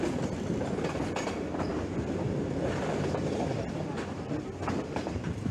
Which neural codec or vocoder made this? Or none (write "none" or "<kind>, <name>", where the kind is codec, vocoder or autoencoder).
vocoder, BigVGAN v2